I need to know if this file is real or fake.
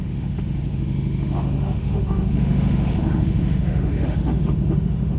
fake